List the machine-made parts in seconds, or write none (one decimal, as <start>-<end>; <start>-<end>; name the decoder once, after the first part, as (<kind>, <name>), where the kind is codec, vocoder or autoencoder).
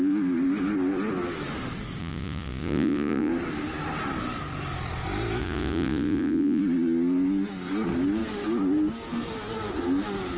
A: 2.0-3.3 (vocoder, Vocos); 5.4-6.6